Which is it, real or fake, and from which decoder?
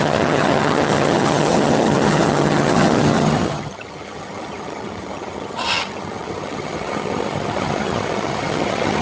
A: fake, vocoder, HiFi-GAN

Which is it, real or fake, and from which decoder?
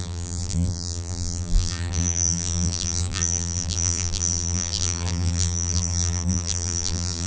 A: fake, vocoder, BigVGAN v2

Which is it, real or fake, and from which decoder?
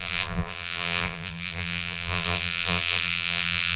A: fake, vocoder, BigVGAN v2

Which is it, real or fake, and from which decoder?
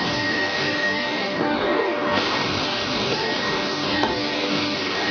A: fake, codec, DAC